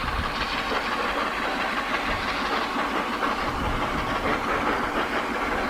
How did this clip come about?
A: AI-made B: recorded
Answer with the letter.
B